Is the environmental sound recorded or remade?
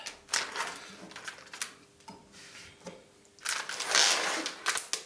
recorded